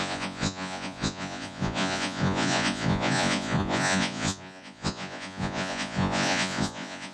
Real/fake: fake